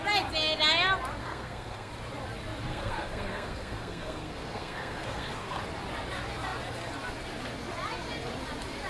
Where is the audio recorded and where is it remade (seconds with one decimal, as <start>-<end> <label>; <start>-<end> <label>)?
0.0-1.2 recorded; 1.2-1.9 remade; 1.9-2.7 recorded; 2.7-5.6 remade; 5.6-8.9 recorded